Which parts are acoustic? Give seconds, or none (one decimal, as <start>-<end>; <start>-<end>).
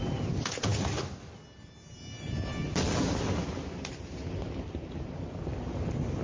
0.0-6.2